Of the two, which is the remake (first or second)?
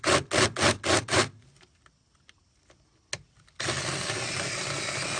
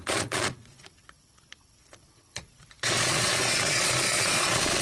second